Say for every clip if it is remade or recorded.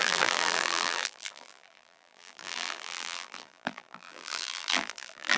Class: remade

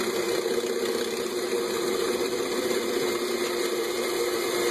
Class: remade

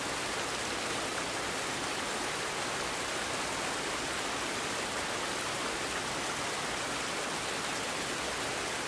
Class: recorded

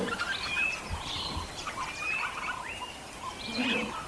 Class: recorded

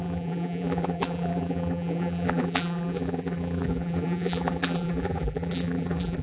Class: remade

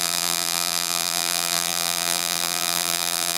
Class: remade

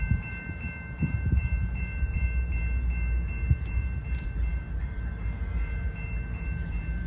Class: remade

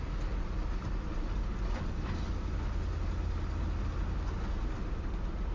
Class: recorded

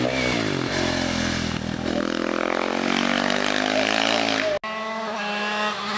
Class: recorded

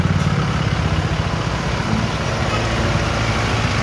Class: recorded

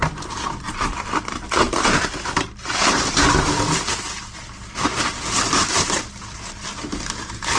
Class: remade